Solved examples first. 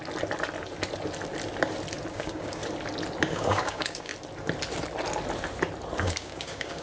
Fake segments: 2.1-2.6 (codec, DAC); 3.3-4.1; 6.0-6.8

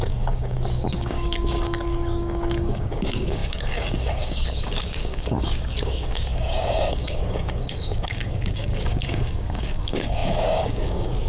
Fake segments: 0.0-11.3 (codec, DAC)

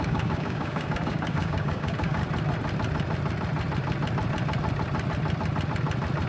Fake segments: 0.0-2.2 (codec, DAC)

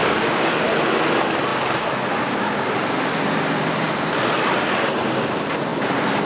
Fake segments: 0.0-0.5 (codec, DAC)

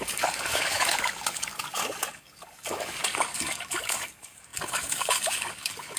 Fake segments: 0.0-6.0 (codec, DAC)

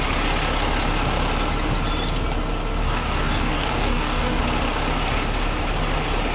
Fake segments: 2.8-4.4 (codec, DAC)

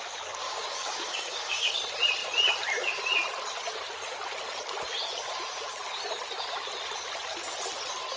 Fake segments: 0.4-1.7 (codec, DAC)

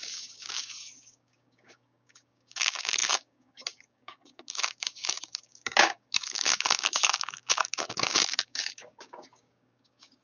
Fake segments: 0.0-10.2 (codec, DAC)